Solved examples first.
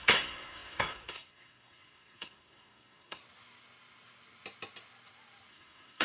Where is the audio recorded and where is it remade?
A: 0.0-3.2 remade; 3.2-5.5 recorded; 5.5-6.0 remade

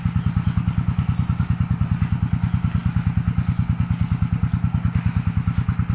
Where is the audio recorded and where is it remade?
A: 0.0-5.9 recorded

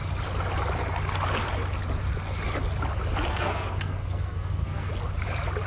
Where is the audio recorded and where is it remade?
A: 0.0-3.3 recorded; 3.3-4.9 remade; 4.9-5.7 recorded

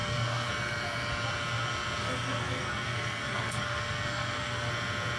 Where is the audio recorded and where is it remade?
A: 0.0-0.5 remade; 0.5-2.0 recorded; 2.0-4.7 remade; 4.7-5.2 recorded